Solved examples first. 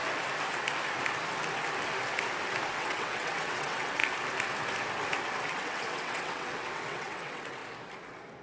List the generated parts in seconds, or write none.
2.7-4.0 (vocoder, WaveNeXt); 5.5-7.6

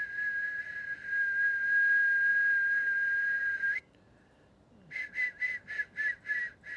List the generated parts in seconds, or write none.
none

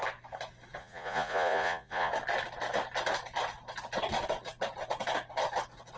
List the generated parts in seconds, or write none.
0.8-2.1 (vocoder, Vocos)

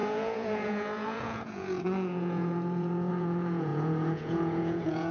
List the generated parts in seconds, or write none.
0.0-5.1 (vocoder, Vocos)

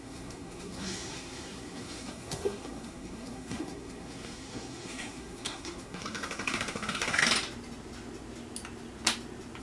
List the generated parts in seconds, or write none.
0.0-7.2 (codec, SNAC)

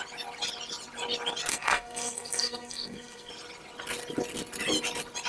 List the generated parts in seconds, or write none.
1.5-3.3 (codec, SNAC)

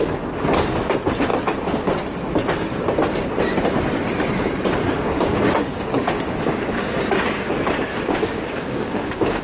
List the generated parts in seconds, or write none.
4.8-7.5 (codec, DAC); 7.9-9.4